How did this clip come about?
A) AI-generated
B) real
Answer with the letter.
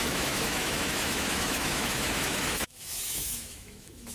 A